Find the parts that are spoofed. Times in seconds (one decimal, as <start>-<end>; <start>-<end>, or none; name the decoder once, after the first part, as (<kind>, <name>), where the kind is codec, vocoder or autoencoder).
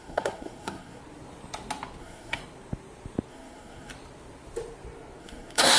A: 0.0-1.0 (codec, SNAC); 2.0-2.4; 3.3-3.9; 5.2-5.8